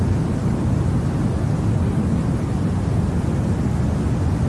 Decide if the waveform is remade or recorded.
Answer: recorded